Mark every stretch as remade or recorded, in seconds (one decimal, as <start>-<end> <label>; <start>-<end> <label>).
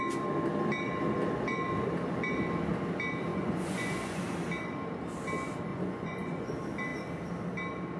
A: 0.0-3.3 recorded; 3.3-4.2 remade; 4.2-5.7 recorded; 5.7-6.5 remade; 6.5-8.0 recorded